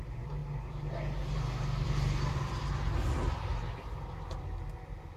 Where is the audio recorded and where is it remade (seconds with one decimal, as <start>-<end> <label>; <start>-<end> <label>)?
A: 0.0-5.2 recorded